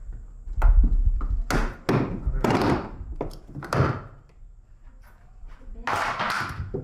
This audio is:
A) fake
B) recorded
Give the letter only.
B